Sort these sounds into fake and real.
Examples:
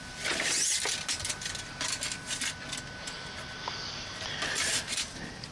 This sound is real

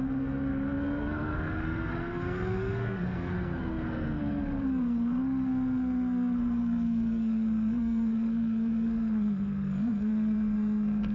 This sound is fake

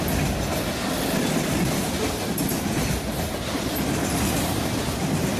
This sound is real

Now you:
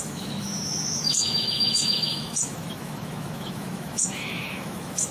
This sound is fake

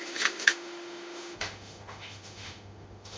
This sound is fake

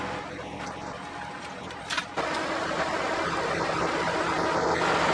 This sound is real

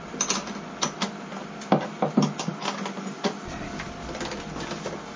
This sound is real